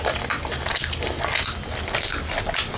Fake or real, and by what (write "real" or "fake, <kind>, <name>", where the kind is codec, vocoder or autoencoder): real